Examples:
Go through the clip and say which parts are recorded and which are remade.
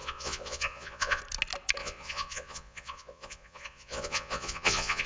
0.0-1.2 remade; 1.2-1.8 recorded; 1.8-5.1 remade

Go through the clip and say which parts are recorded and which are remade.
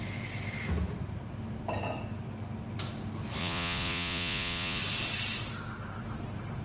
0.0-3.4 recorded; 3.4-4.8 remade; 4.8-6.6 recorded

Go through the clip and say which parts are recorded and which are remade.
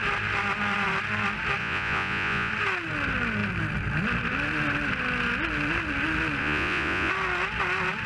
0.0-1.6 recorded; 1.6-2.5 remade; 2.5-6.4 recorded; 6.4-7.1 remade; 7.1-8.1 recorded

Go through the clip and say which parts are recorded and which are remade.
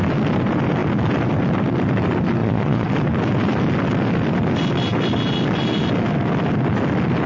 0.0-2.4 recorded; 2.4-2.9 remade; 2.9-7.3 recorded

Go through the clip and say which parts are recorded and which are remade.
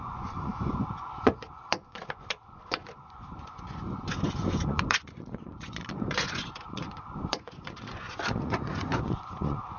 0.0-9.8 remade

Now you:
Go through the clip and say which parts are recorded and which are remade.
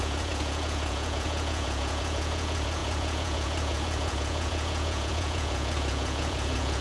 0.0-6.8 remade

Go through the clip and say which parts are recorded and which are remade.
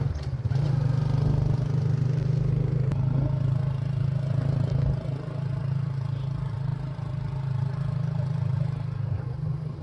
0.0-9.8 recorded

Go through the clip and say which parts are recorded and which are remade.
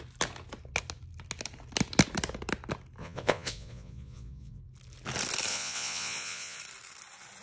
0.0-3.0 recorded; 3.0-4.6 remade; 4.6-5.5 recorded; 5.5-6.6 remade; 6.6-7.4 recorded